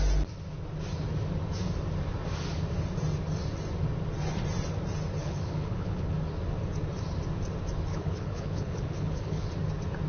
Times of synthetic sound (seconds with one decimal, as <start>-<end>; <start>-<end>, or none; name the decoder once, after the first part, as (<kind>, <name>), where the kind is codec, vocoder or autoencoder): 5.2-6.1 (codec, HILCodec); 7.9-9.5